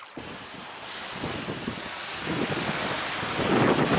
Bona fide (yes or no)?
yes